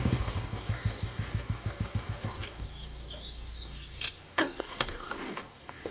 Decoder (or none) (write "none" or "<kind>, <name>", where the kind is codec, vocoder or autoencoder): codec, DAC